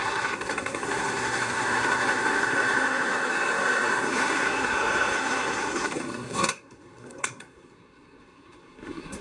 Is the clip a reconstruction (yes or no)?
yes